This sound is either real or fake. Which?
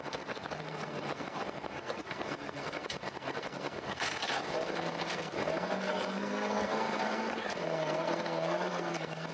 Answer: fake